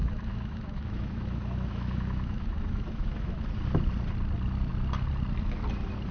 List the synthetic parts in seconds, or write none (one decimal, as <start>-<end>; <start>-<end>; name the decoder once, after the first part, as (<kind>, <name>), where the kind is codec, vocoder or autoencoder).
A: 0.0-3.4 (autoencoder, DAC-VAE)